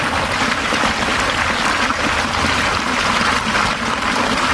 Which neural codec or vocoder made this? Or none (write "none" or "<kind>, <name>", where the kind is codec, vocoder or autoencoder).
none